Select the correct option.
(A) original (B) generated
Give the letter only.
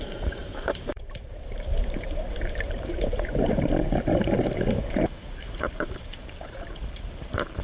B